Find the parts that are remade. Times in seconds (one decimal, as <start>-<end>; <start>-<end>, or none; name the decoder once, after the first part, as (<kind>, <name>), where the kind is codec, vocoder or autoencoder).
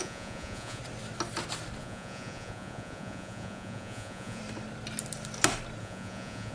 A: 0.0-0.8 (vocoder, Vocos); 1.8-4.4; 5.8-6.5